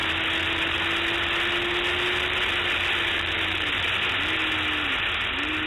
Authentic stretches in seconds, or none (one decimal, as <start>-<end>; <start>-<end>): 0.0-5.7